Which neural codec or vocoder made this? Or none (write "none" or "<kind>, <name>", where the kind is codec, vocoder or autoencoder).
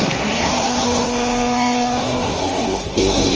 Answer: codec, SNAC